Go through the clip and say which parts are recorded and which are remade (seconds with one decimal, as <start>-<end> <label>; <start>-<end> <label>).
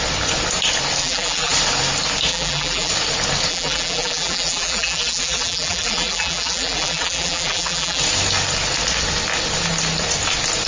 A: 0.0-1.0 recorded; 1.0-1.5 remade; 1.5-2.3 recorded; 2.3-2.9 remade; 2.9-3.5 recorded; 3.5-8.0 remade; 8.0-10.7 recorded